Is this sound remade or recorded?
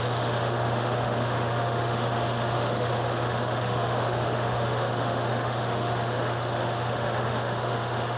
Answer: remade